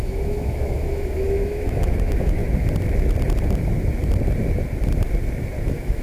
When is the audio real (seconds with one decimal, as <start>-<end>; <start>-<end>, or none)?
2.4-5.6